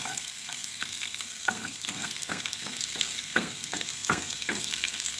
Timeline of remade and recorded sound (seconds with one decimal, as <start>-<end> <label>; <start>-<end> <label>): 0.0-5.2 remade